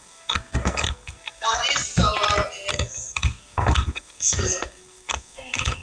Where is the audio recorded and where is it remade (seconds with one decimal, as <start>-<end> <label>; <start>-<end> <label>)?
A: 0.0-1.6 remade; 1.6-2.7 recorded; 2.7-5.8 remade